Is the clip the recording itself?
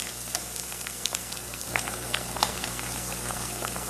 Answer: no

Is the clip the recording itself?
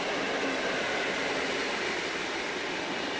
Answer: yes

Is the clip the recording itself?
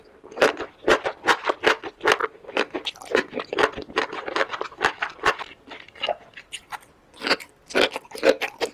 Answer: yes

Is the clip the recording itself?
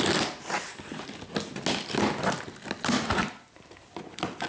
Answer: yes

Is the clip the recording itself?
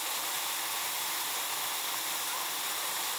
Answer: yes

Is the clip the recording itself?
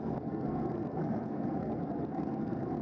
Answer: no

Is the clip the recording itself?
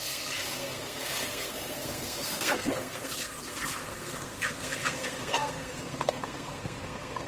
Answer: no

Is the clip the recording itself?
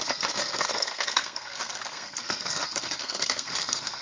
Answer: no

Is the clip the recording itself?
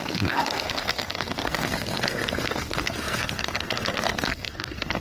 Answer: no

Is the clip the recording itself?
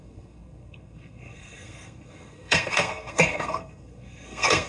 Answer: no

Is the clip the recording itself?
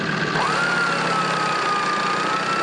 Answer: yes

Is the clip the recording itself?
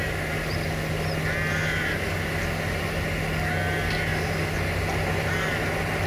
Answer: yes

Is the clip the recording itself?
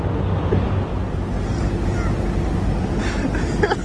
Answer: yes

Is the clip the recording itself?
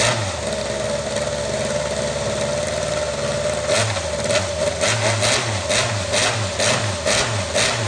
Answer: yes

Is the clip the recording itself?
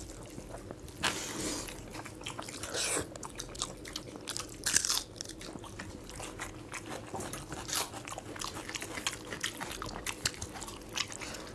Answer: yes